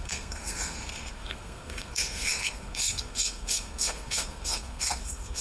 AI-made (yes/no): yes